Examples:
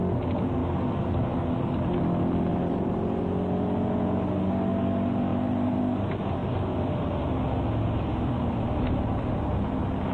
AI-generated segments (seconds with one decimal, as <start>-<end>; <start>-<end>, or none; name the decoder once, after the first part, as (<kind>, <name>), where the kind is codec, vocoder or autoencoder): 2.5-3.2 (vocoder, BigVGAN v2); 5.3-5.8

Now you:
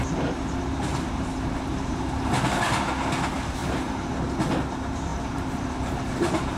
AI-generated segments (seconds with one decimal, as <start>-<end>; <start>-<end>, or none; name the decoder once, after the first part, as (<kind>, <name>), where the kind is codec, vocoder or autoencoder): 0.9-2.0 (vocoder, BigVGAN v2); 3.6-4.2; 5.1-6.6

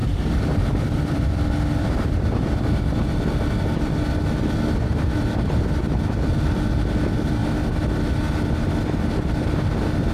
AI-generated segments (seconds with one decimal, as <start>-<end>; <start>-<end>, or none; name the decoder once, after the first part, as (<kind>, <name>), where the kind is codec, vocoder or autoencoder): 0.0-3.2 (vocoder, BigVGAN v2); 4.9-5.8